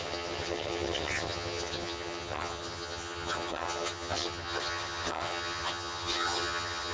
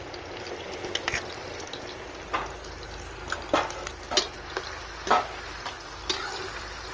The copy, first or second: first